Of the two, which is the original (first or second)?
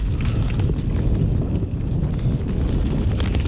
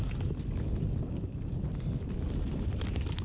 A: first